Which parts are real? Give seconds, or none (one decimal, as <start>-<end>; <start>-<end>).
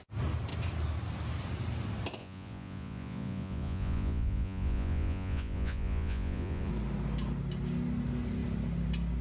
0.0-2.2; 6.7-9.2